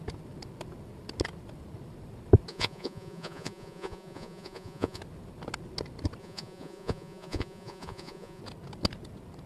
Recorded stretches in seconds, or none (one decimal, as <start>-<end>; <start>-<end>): 0.0-2.5; 5.0-6.2; 8.4-9.5

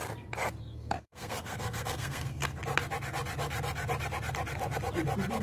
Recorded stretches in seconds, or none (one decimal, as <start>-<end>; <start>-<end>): 0.0-0.6; 2.4-5.4